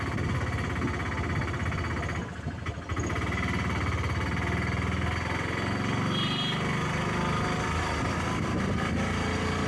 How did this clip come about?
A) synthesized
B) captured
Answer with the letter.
B